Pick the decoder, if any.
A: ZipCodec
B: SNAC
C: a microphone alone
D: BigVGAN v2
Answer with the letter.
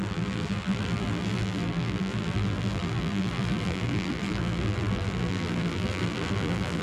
D